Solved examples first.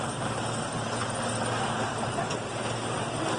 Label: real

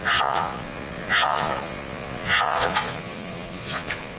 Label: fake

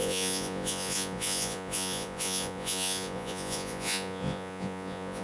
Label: fake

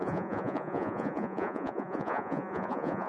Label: fake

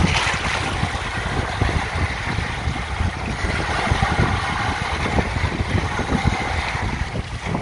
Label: real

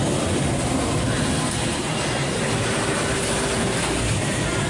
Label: real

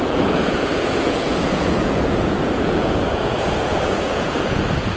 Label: fake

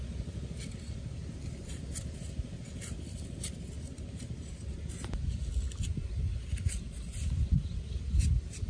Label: real